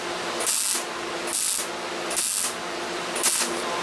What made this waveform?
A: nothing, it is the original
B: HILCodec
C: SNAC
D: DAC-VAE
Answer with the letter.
A